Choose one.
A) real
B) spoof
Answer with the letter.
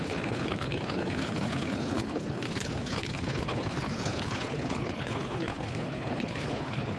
B